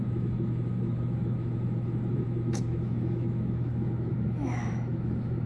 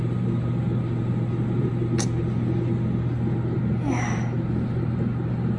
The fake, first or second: first